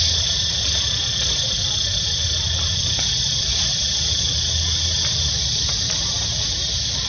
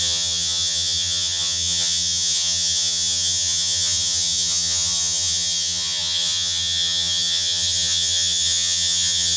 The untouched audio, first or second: first